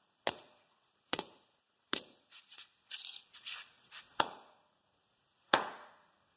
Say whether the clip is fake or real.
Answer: fake